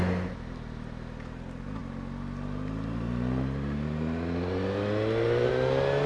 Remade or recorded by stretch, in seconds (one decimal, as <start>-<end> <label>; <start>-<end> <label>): 0.0-6.1 recorded